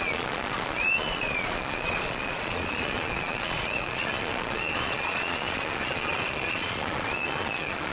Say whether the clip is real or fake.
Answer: fake